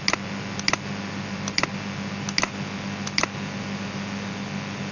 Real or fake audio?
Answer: real